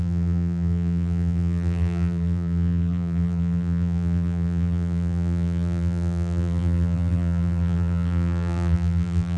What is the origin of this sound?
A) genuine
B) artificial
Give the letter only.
B